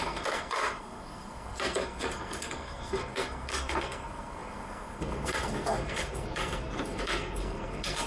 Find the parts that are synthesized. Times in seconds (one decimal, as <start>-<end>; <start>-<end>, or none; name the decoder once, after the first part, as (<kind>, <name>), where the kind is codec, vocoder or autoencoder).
0.0-8.1 (codec, SNAC)

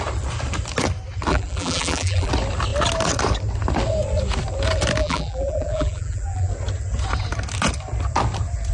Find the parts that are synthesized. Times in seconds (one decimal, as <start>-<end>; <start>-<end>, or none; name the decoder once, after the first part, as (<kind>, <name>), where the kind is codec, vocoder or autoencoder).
1.3-2.3 (vocoder, BigVGAN v2); 5.0-6.5

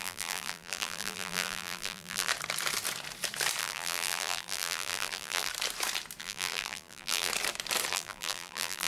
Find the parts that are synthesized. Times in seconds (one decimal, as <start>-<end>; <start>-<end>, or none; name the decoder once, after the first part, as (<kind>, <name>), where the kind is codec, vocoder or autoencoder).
0.0-2.3 (vocoder, BigVGAN v2); 3.6-5.5; 6.2-7.3; 7.9-8.9

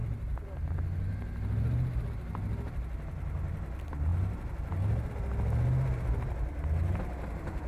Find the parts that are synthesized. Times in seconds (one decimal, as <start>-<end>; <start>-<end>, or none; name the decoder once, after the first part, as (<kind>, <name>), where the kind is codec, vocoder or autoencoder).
none

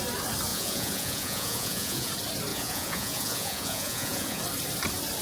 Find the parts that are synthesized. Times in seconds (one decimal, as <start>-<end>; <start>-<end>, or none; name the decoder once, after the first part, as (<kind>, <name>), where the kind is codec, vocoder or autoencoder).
0.5-2.1 (vocoder, Vocos); 2.5-4.4